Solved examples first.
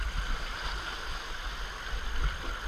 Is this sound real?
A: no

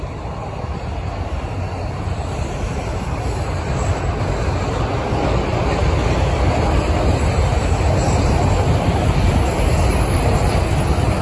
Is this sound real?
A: yes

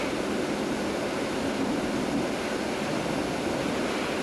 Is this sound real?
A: yes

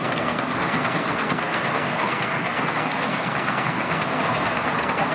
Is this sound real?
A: no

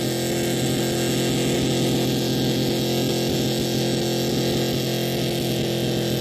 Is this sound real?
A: yes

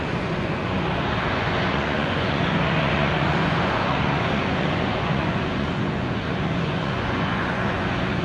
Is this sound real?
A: no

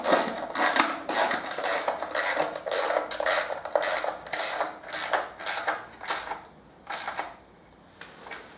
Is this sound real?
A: yes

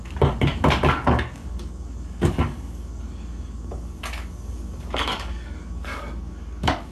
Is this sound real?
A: no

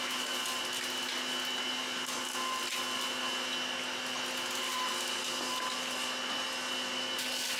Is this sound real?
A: yes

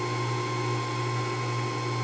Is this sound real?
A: yes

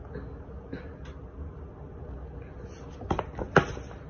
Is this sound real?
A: yes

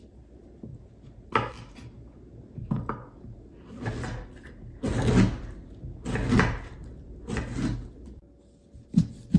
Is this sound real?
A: yes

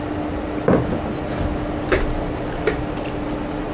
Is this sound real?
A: yes